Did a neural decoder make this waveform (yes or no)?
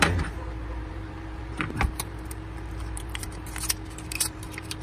yes